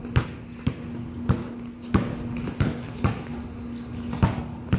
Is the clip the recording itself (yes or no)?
yes